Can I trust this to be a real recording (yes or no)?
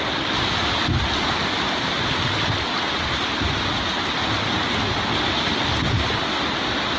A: yes